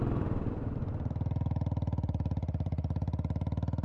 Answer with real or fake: fake